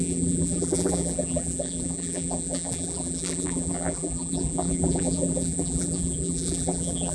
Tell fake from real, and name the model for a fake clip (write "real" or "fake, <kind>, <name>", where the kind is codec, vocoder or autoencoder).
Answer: fake, vocoder, BigVGAN v2